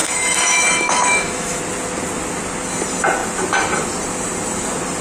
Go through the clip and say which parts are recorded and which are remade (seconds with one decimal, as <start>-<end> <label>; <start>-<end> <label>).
0.0-1.6 remade; 1.6-5.0 recorded